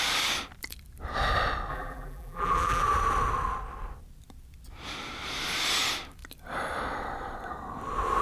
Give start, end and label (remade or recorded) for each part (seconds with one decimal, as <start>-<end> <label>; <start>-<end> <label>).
0.0-1.7 recorded; 1.7-2.8 remade; 2.8-8.2 recorded